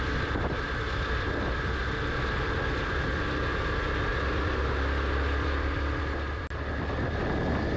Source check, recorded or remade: recorded